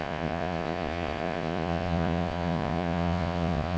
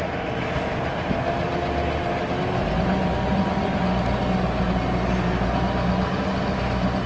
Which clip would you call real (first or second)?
second